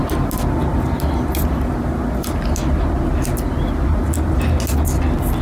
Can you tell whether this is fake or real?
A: real